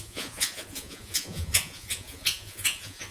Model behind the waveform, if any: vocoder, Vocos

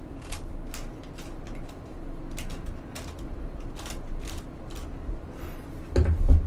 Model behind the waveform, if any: none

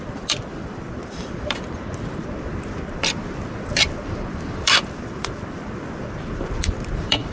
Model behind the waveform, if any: vocoder, BigVGAN v2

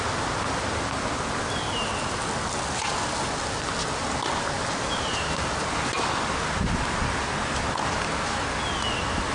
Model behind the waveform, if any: none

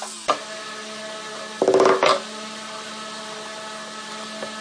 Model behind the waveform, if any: none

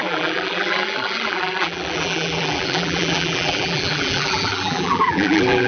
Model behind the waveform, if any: vocoder, BigVGAN v2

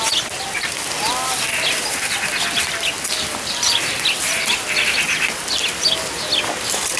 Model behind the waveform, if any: none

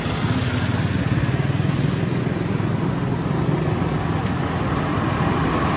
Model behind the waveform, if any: none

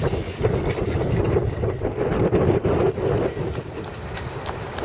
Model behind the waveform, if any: none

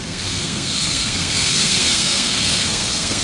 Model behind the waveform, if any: codec, SNAC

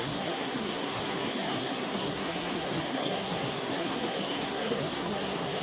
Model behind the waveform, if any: codec, SNAC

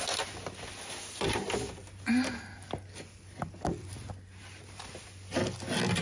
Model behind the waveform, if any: none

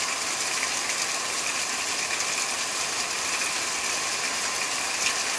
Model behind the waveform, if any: none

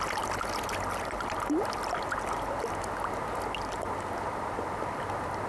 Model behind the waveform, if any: none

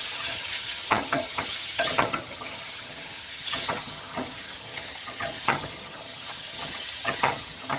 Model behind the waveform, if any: vocoder, HiFi-GAN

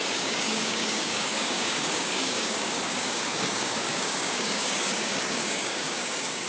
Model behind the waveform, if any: codec, DAC